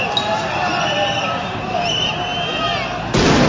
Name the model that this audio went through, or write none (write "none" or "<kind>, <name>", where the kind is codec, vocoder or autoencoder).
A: none